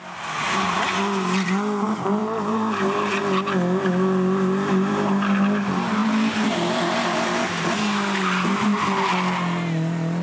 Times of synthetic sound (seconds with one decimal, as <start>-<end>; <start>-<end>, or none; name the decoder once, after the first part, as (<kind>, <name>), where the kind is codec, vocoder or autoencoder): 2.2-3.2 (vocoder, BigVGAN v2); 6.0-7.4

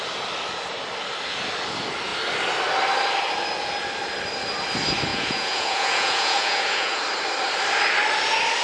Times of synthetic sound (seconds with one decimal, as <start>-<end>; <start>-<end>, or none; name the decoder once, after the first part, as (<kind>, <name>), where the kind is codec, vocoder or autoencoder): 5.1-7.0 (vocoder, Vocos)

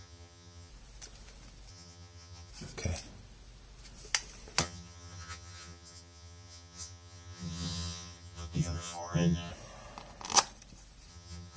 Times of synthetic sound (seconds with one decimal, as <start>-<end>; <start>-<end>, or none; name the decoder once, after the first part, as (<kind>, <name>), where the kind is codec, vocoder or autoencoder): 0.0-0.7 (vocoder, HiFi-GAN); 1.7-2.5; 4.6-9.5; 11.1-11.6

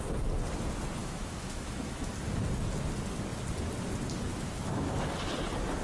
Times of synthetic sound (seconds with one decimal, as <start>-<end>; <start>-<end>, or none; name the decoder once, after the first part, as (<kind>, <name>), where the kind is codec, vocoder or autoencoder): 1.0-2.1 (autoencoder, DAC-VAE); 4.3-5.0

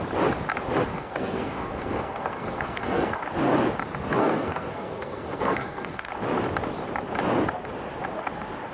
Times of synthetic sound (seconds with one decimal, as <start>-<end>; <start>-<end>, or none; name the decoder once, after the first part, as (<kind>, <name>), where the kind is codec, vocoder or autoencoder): 0.9-3.2 (codec, SNAC); 4.2-6.1